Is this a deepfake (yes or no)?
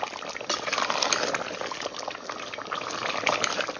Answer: no